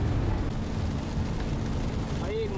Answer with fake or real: real